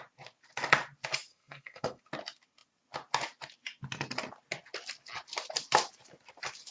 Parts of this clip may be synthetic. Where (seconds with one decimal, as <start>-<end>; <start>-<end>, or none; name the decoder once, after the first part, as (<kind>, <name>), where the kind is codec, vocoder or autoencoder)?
1.3-2.0 (codec, SNAC)